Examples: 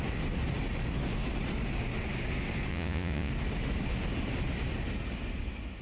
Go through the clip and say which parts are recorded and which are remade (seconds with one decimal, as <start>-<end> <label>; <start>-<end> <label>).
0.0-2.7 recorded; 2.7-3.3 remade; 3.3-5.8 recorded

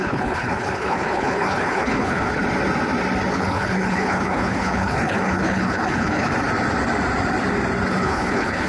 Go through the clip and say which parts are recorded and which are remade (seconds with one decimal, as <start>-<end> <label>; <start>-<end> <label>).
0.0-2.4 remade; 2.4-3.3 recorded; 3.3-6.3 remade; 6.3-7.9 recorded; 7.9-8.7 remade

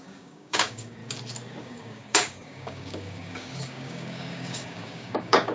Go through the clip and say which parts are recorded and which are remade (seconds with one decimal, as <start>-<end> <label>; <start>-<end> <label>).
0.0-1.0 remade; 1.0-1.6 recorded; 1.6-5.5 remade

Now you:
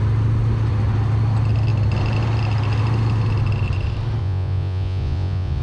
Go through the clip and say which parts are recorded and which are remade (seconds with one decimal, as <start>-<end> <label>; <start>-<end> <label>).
0.0-4.2 recorded; 4.2-5.6 remade

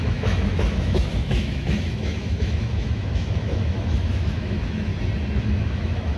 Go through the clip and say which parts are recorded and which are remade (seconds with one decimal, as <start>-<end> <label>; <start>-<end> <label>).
0.0-4.9 remade; 4.9-5.4 recorded; 5.4-6.2 remade